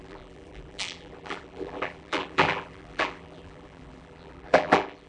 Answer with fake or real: fake